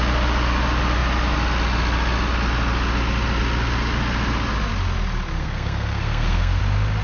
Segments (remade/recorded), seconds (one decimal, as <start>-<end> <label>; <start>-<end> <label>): 0.0-5.4 recorded; 5.4-6.6 remade; 6.6-7.0 recorded